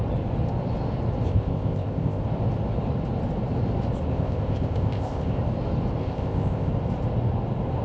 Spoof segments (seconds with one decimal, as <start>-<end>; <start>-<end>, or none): 1.3-2.2; 4.1-5.4; 6.0-6.7